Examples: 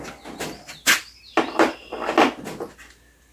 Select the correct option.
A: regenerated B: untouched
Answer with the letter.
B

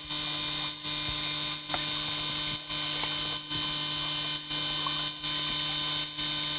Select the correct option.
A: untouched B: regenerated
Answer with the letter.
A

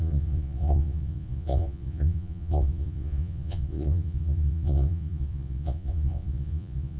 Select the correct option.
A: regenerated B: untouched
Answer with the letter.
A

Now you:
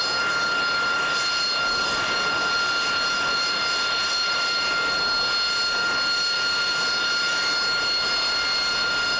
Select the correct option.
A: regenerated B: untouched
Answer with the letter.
B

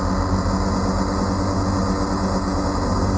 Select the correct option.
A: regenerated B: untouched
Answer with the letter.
B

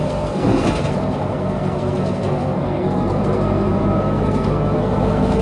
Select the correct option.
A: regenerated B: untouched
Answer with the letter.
A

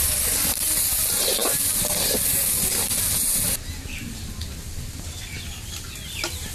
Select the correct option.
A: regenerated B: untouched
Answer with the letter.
B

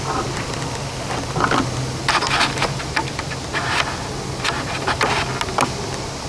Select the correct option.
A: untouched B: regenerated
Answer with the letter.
A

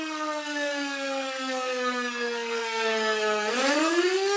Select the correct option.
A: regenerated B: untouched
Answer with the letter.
A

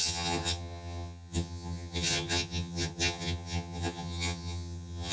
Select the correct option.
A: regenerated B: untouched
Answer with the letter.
A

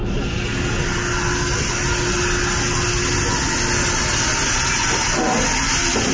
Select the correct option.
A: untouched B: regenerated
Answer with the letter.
A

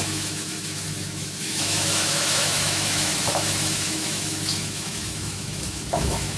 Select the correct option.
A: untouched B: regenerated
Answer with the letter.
B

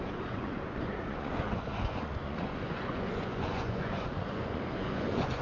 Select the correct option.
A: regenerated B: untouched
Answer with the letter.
A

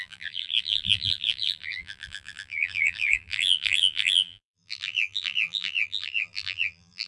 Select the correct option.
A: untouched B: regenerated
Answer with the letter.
B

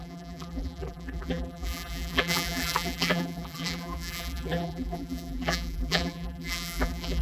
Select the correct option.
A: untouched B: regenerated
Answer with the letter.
B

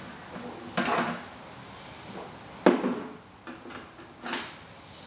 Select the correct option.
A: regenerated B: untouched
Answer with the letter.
B